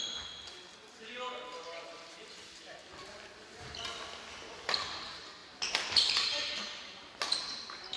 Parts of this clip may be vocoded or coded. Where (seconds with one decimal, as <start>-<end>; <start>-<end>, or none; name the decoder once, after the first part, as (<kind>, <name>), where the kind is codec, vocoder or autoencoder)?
none